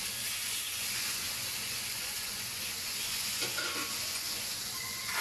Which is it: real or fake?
fake